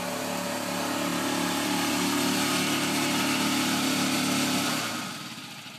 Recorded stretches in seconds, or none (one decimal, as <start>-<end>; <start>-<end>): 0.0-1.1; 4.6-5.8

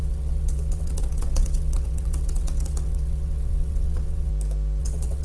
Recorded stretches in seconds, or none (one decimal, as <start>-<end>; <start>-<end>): 4.3-4.8

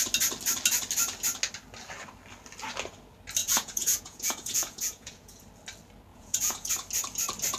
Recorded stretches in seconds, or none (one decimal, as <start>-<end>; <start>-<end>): 0.0-3.4; 5.4-6.1; 6.7-7.6

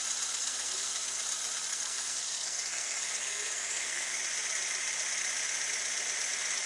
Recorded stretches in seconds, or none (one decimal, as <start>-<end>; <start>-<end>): 0.0-0.4; 1.2-1.7; 4.2-6.7

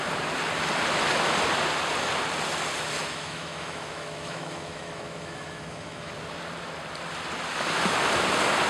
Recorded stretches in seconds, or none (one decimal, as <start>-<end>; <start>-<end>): 0.0-3.0; 6.1-8.7